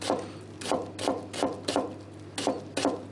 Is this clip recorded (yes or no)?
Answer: yes